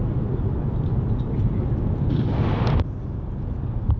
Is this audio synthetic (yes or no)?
no